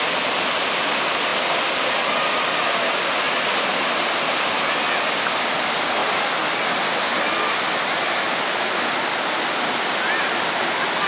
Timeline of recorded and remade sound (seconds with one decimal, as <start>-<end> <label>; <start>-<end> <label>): 0.0-11.1 recorded

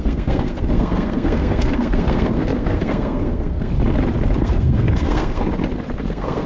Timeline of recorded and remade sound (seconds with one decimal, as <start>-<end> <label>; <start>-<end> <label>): 0.0-3.7 remade; 3.7-4.4 recorded; 4.4-5.4 remade; 5.4-6.0 recorded; 6.0-6.5 remade

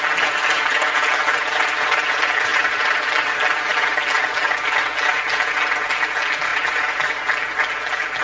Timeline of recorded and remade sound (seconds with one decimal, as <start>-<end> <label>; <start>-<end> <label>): 0.0-2.5 recorded; 2.5-3.0 remade; 3.0-6.5 recorded; 6.5-7.2 remade; 7.2-8.2 recorded

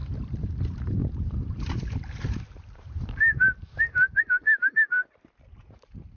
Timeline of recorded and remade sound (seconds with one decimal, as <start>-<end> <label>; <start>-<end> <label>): 0.0-0.6 remade; 0.6-1.0 recorded; 1.0-4.2 remade; 4.2-6.2 recorded

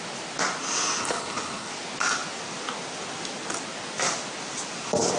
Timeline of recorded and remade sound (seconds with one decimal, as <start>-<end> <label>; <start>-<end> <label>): 0.0-1.0 recorded; 1.0-1.7 remade; 1.7-5.2 recorded

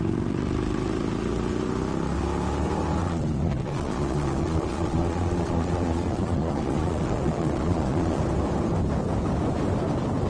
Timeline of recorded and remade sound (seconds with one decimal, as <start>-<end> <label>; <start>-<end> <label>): 0.0-3.0 recorded; 3.0-8.2 remade; 8.2-10.3 recorded

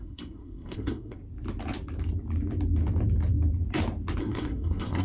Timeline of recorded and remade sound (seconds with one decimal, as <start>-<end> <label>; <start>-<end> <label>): 0.0-1.2 remade; 1.2-4.2 recorded; 4.2-5.0 remade

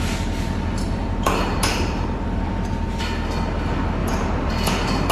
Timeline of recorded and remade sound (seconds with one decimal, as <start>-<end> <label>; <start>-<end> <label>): 0.0-0.7 recorded; 0.7-3.0 remade; 3.0-4.0 recorded; 4.0-5.1 remade